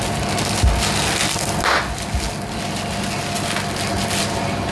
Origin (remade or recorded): recorded